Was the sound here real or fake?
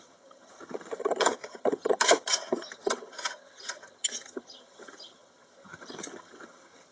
fake